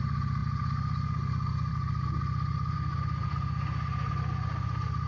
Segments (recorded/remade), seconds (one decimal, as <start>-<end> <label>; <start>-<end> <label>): 0.0-5.1 recorded